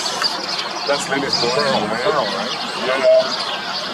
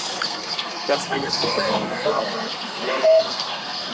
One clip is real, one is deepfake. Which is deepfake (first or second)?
second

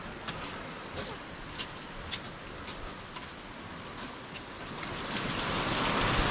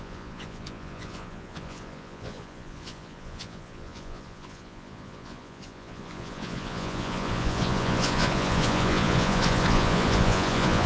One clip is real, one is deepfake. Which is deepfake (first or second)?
second